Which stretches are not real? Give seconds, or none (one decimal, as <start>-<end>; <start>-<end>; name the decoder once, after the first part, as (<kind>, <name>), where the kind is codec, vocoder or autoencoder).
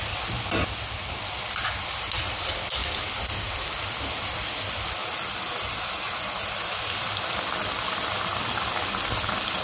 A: none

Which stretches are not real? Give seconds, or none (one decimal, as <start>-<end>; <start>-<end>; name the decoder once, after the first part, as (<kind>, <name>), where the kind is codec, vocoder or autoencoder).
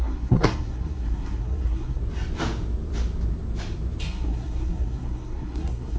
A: 0.0-2.0 (codec, SNAC); 4.0-6.0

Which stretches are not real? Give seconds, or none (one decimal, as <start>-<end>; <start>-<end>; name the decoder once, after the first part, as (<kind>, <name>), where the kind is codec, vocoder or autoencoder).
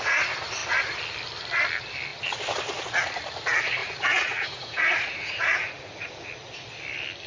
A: 3.8-6.3 (vocoder, Vocos)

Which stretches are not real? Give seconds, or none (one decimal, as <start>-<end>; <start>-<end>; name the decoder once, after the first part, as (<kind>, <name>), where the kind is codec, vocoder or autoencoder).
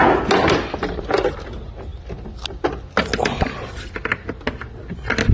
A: none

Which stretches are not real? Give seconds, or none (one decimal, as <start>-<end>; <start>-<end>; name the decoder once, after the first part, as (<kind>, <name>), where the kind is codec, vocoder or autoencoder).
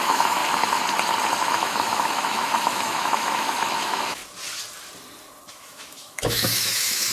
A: 0.0-0.4 (autoencoder, DAC-VAE); 1.5-4.2; 5.5-7.1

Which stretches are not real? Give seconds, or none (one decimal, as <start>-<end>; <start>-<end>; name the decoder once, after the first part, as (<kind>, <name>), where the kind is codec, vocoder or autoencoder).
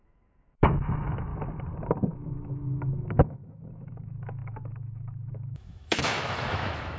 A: 0.0-1.3 (autoencoder, DAC-VAE); 2.1-7.0